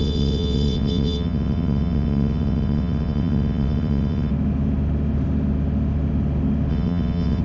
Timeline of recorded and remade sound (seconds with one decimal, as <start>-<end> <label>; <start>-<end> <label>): 0.0-4.3 remade; 4.3-6.7 recorded; 6.7-7.4 remade